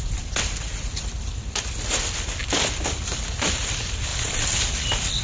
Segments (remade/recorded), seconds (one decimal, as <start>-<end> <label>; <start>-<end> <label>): 0.0-5.2 remade